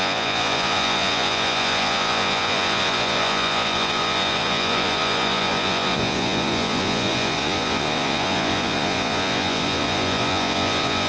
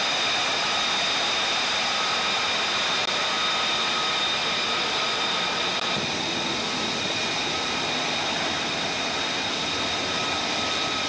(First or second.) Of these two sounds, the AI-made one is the first